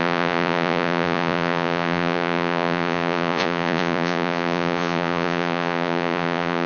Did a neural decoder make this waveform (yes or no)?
yes